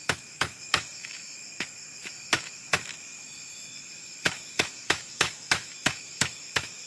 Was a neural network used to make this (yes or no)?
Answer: yes